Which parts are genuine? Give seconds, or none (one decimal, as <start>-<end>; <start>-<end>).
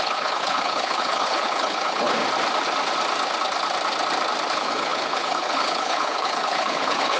2.2-4.5